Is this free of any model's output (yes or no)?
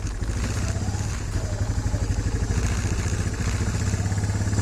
yes